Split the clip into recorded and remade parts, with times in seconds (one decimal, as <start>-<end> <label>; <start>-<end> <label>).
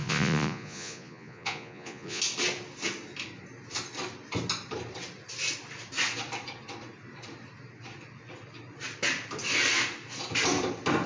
0.0-2.2 remade; 2.2-11.1 recorded